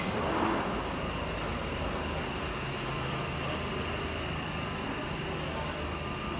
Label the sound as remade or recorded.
recorded